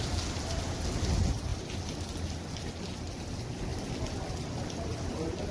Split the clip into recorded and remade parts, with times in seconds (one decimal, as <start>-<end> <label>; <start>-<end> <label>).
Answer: 0.0-5.5 recorded